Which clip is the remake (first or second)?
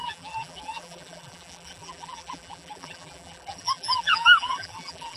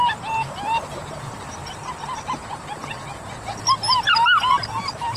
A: first